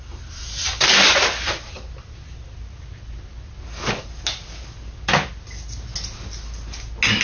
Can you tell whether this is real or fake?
real